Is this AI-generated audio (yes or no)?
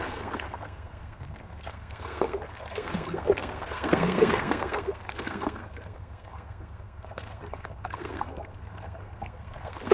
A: yes